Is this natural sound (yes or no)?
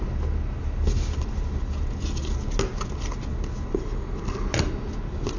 yes